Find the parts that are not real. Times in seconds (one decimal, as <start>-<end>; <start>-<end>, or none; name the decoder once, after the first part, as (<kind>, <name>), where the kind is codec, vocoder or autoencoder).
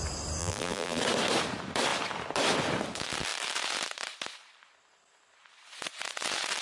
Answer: 0.4-1.0 (vocoder, BigVGAN v2)